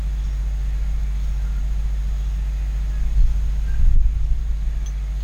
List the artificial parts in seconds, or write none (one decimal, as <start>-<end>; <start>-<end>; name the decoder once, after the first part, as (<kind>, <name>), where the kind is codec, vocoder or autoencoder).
none